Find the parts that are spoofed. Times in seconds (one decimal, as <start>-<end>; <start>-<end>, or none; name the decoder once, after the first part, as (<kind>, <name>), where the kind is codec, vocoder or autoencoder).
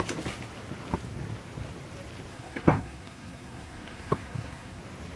2.3-4.8 (codec, SNAC)